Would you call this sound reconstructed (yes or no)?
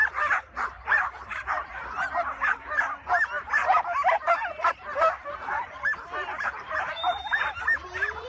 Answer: yes